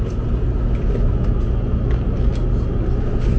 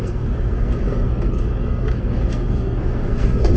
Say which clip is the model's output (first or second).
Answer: second